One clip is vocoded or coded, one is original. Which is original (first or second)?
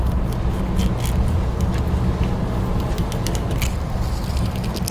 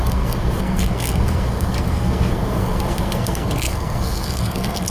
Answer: first